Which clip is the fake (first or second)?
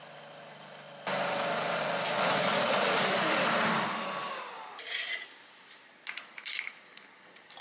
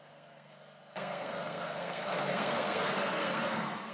second